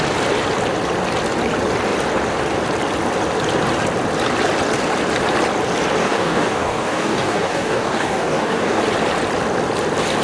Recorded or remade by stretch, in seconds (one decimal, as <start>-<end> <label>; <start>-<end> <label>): 0.0-6.0 recorded; 6.0-8.8 remade; 8.8-10.2 recorded

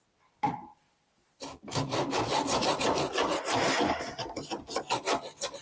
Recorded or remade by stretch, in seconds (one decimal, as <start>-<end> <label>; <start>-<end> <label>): 0.0-0.6 recorded; 0.6-4.0 remade; 4.0-5.6 recorded

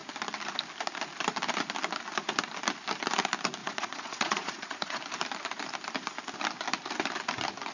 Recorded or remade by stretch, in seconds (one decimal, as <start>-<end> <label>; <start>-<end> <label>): 0.0-3.6 recorded; 3.6-5.0 remade; 5.0-7.7 recorded

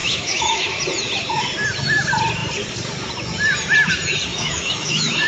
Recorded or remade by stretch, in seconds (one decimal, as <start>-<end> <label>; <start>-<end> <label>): 0.0-0.8 remade; 0.8-4.3 recorded; 4.3-5.3 remade

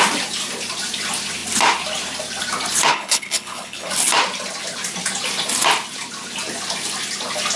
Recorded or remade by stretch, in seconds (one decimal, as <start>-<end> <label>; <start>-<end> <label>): 0.0-2.9 recorded; 2.9-3.9 remade; 3.9-7.6 recorded